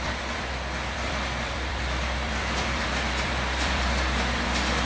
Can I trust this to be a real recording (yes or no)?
no